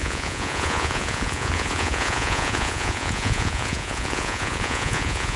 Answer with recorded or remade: remade